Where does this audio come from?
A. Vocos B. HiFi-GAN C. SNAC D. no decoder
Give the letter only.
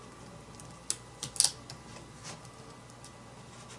D